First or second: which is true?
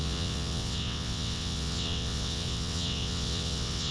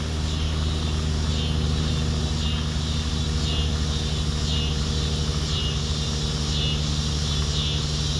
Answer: second